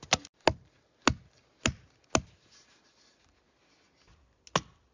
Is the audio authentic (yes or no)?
yes